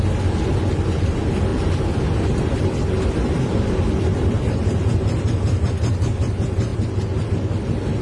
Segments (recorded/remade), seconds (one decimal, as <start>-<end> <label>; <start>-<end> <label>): 0.0-8.0 recorded